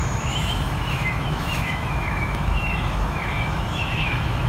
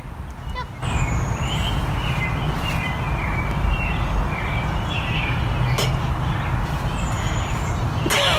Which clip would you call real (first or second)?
second